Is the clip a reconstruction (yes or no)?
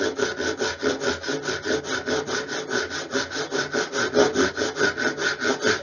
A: no